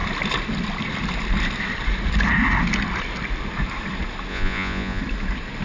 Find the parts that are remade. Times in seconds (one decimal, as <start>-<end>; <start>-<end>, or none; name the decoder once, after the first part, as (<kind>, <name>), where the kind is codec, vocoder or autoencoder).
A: 4.3-5.0 (vocoder, Vocos)